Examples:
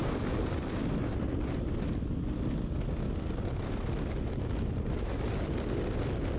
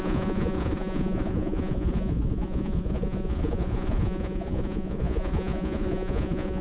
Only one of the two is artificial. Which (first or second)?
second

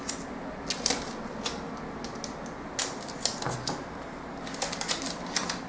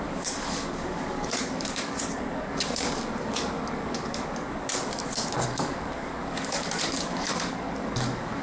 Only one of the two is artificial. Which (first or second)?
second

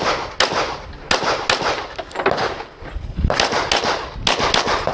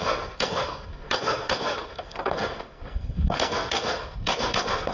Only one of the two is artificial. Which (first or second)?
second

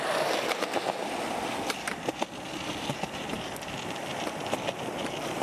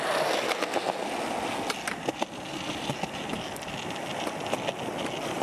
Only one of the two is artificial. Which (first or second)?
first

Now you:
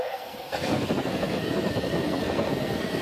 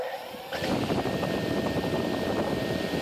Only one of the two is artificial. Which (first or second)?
first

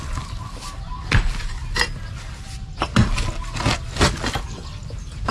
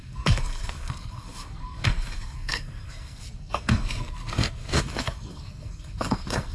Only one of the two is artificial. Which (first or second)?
second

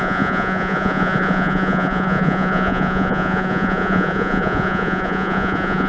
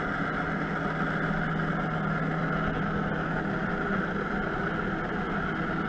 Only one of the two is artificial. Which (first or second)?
first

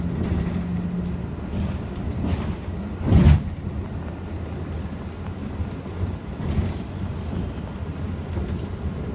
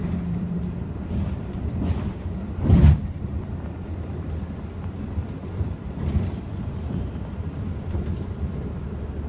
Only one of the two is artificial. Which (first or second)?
second